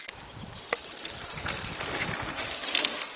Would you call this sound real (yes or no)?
no